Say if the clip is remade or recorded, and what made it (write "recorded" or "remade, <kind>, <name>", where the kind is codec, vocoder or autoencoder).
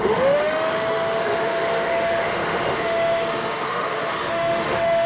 remade, autoencoder, DAC-VAE